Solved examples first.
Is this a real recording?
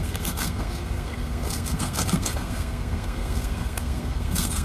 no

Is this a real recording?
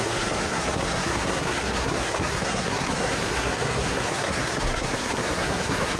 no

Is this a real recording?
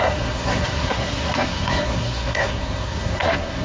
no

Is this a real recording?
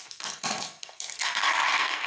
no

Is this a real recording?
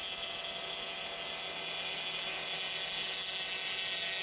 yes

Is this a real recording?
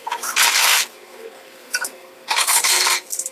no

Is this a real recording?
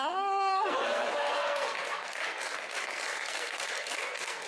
no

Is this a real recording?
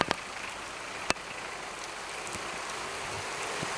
yes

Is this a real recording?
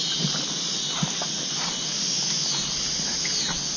yes